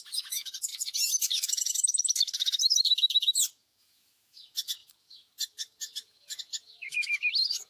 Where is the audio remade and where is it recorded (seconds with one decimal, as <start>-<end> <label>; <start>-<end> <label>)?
0.0-7.7 remade